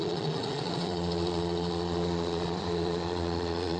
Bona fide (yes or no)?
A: no